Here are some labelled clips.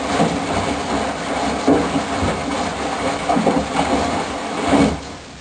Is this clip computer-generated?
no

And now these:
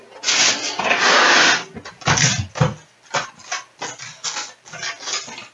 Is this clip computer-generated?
no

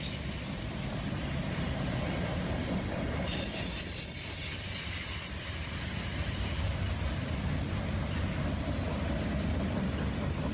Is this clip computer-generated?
no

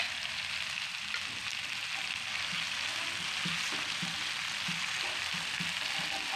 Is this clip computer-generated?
no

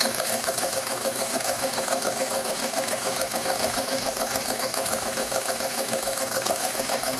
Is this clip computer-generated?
yes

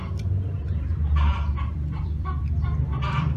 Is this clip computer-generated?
yes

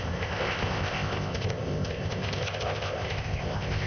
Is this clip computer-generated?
yes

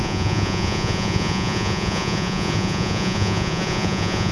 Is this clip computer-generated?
yes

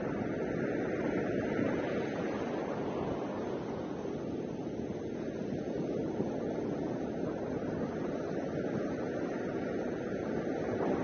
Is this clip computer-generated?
no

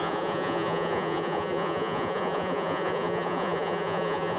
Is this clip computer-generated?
yes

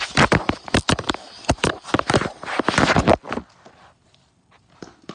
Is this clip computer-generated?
no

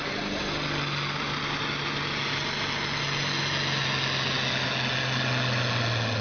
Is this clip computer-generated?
no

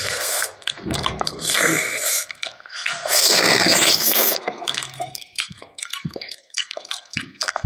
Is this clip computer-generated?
yes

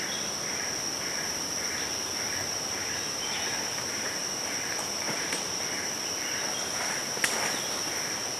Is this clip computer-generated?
no